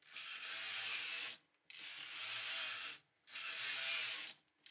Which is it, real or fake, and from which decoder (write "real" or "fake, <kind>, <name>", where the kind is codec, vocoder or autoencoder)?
real